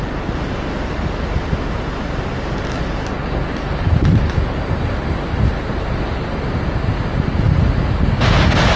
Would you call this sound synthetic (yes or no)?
no